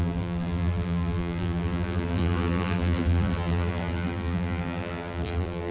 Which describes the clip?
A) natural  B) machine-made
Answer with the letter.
B